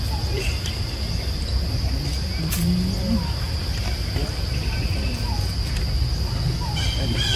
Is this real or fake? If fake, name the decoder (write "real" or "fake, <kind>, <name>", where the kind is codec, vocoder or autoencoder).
real